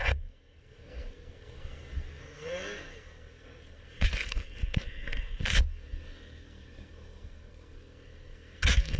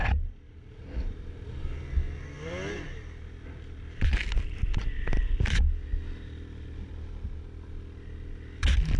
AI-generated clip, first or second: first